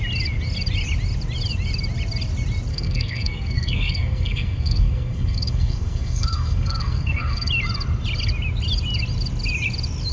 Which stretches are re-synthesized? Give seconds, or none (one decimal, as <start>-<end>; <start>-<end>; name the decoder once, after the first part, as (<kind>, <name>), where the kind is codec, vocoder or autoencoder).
2.7-7.5 (codec, SNAC)